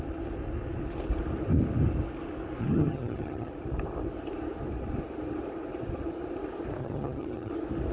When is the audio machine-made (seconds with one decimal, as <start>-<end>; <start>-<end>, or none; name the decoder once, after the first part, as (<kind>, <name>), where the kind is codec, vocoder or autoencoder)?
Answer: 2.6-3.5 (vocoder, HiFi-GAN); 6.8-7.5

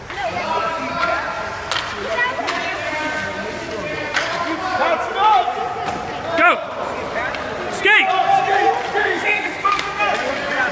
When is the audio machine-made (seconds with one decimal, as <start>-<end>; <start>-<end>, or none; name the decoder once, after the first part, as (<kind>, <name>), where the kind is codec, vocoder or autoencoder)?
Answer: 9.0-10.0 (codec, SNAC)

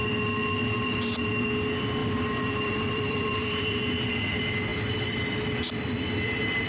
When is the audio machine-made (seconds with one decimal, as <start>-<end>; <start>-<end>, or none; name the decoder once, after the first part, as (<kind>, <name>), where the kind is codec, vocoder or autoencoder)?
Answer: 2.0-3.8 (vocoder, BigVGAN v2)

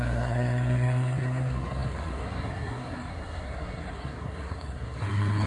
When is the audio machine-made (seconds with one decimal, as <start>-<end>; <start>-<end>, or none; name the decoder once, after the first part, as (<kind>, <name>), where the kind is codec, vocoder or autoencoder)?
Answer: 0.0-5.5 (codec, SNAC)

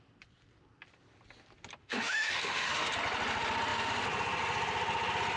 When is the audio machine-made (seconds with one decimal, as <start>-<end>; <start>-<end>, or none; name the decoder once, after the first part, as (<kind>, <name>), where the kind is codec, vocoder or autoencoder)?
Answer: 1.8-2.9 (autoencoder, DAC-VAE)

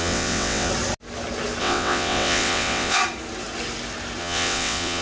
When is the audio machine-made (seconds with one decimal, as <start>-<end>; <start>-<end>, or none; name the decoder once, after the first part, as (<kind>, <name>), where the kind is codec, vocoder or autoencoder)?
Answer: 0.0-0.7 (vocoder, WaveNeXt); 1.6-3.0; 4.2-5.0

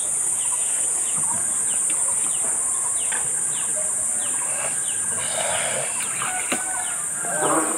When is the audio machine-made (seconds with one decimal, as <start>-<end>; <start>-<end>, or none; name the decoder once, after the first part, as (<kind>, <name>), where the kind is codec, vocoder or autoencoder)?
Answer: 0.6-1.2 (vocoder, Vocos)